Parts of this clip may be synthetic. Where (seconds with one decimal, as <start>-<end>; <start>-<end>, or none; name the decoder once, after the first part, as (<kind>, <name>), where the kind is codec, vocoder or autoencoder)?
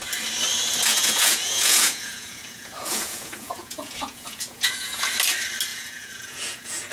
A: 0.9-5.0 (vocoder, Vocos); 5.7-6.9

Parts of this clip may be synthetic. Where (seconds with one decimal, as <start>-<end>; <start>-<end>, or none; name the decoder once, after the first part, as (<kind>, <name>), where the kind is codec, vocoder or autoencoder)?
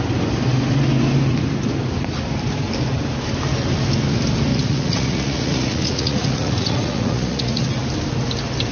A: 4.5-7.7 (vocoder, Vocos)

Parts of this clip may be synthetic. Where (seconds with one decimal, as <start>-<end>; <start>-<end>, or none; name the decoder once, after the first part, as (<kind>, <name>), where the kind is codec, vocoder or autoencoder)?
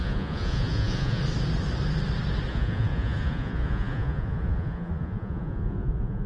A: 0.0-1.2 (vocoder, Vocos); 2.5-6.3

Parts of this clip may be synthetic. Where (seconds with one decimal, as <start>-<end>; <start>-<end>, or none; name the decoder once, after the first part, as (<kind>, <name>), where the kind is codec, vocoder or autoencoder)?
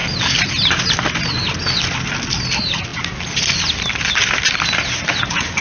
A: none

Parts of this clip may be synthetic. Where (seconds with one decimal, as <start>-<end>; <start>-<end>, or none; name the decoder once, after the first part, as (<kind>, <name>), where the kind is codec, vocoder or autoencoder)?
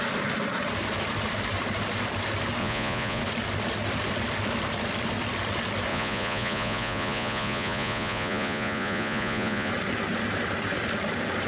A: 2.6-3.2 (vocoder, Vocos); 5.9-9.7